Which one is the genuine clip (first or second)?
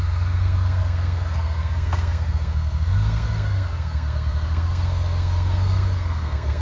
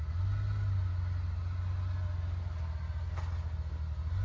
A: second